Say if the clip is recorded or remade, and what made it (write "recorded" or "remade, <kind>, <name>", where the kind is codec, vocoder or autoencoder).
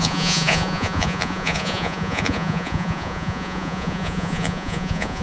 remade, vocoder, Vocos